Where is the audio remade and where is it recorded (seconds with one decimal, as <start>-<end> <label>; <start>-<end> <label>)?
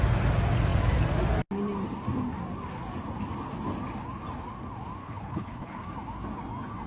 0.0-5.0 recorded; 5.0-5.8 remade; 5.8-6.9 recorded